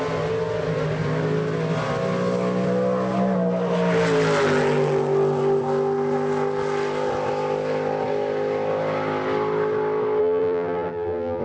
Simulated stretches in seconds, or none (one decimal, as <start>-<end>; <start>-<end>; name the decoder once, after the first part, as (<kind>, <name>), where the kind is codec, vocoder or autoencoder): 10.2-11.4 (vocoder, BigVGAN v2)